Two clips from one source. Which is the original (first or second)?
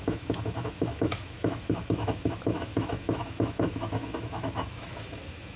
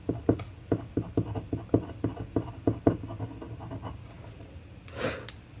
second